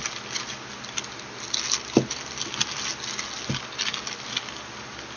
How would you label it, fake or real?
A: real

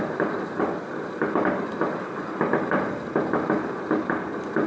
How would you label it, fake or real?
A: real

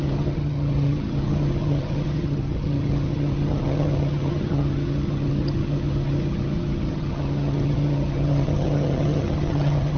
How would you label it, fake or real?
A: fake